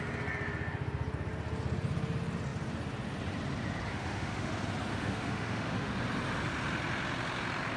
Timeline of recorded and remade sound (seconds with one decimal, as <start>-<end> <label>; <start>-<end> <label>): 0.0-3.9 recorded; 3.9-4.5 remade; 4.5-4.9 recorded; 4.9-5.9 remade; 5.9-7.8 recorded